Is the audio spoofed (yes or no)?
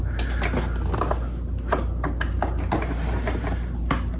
no